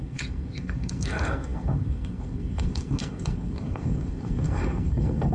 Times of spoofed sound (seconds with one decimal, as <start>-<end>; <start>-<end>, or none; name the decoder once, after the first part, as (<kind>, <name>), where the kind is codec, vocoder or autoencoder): 0.0-5.3 (codec, SNAC)